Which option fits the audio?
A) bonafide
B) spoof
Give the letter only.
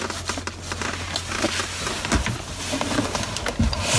A